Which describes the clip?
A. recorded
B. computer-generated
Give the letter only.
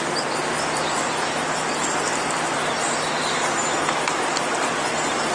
A